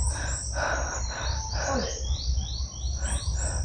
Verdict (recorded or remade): recorded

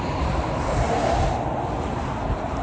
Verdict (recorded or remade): recorded